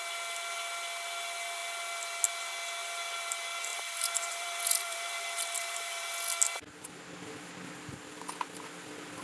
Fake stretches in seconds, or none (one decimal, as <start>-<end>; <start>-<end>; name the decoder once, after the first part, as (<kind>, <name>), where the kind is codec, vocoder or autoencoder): 3.7-6.0 (vocoder, BigVGAN v2)